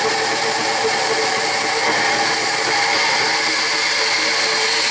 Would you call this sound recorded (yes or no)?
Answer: yes